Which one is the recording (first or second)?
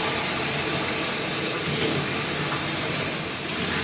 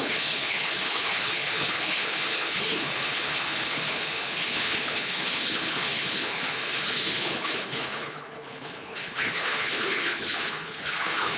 first